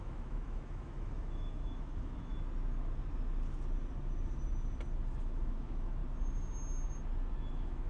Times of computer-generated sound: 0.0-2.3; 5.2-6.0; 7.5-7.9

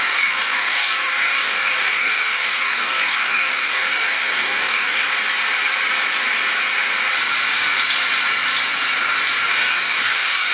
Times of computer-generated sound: 0.0-5.1; 9.5-10.5

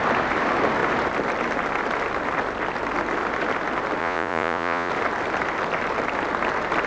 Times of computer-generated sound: 4.0-4.9

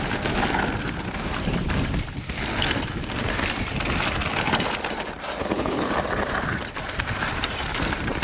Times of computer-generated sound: 5.4-5.9

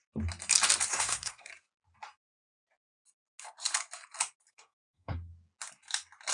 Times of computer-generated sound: 0.9-1.5; 4.5-5.3

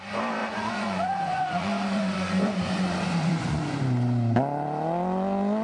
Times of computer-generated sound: 0.4-3.8

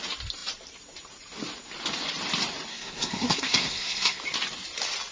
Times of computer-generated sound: 2.7-4.2

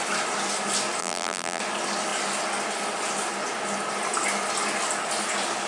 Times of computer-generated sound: 1.0-1.6